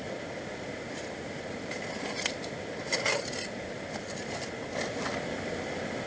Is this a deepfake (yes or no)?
no